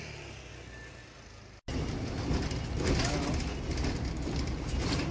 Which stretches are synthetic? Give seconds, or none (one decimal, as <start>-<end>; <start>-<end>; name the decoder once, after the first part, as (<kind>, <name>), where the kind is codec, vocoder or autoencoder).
none